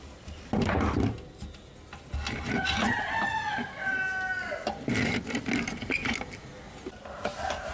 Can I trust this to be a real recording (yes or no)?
yes